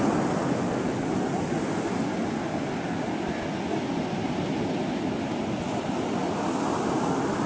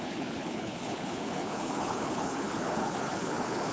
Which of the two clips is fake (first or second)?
second